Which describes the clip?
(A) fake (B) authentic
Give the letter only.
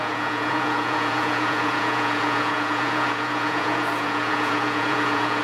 A